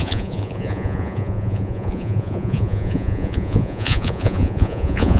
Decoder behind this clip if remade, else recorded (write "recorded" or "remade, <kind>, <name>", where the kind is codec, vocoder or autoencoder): remade, vocoder, Vocos